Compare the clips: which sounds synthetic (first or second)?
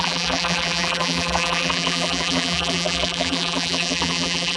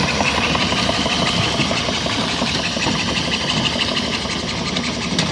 first